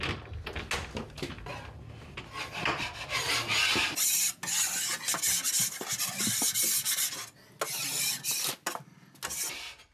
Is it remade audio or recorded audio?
recorded